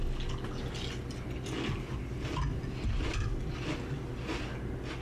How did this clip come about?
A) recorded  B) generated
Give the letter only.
A